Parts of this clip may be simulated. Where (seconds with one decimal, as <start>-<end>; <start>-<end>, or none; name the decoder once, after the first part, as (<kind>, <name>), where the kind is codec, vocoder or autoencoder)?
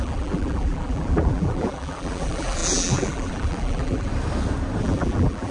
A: 0.0-4.1 (vocoder, BigVGAN v2); 4.8-5.5